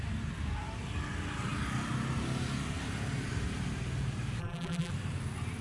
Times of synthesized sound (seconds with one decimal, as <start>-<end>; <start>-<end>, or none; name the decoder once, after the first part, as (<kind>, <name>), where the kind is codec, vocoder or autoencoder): 4.4-4.9 (vocoder, BigVGAN v2)